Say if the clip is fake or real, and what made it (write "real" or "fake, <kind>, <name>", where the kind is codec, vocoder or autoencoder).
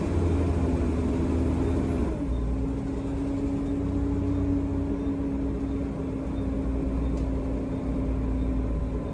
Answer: real